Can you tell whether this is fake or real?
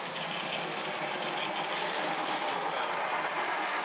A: real